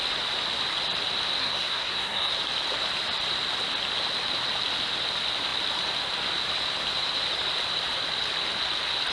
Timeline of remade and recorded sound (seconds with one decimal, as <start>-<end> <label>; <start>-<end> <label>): 0.0-1.4 recorded; 1.4-2.3 remade; 2.3-9.1 recorded